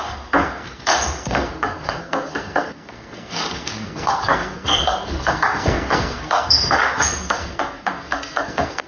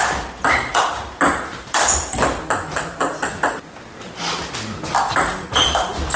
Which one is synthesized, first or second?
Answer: first